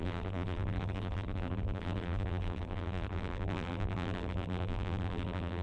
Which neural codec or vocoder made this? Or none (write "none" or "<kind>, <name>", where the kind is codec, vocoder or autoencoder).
vocoder, BigVGAN v2